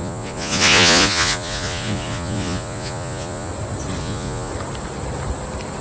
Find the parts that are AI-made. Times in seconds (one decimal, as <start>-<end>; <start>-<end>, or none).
0.0-3.5; 4.0-4.5